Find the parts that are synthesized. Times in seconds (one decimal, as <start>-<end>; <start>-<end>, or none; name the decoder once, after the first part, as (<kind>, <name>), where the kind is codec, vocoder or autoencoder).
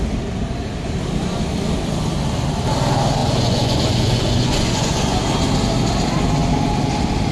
3.2-5.2 (vocoder, Vocos)